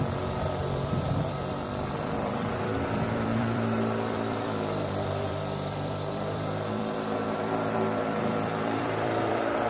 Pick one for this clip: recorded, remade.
remade